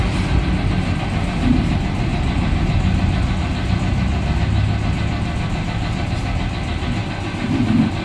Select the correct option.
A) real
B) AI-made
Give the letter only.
A